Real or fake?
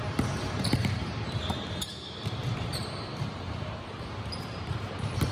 fake